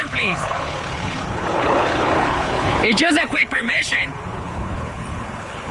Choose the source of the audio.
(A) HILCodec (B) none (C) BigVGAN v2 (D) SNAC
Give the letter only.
A